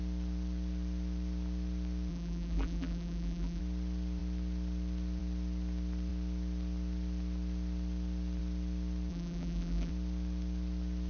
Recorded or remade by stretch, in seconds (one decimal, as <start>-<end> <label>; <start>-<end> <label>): 0.0-2.1 recorded; 2.1-3.6 remade; 3.6-9.1 recorded; 9.1-9.9 remade; 9.9-11.1 recorded